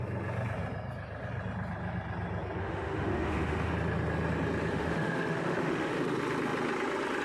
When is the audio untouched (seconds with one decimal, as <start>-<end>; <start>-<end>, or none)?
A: 0.0-2.6; 3.7-4.7; 5.9-7.2